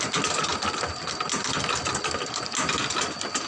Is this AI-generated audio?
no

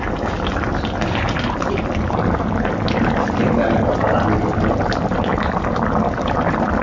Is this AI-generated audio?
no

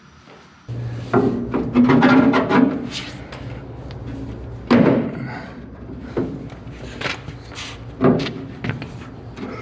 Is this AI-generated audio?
no